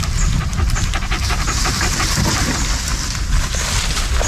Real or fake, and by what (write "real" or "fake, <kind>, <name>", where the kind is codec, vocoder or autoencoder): real